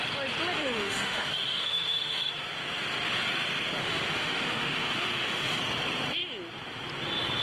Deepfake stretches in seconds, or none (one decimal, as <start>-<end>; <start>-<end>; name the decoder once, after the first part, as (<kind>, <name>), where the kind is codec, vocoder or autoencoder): 0.6-2.3 (autoencoder, DAC-VAE); 3.8-5.6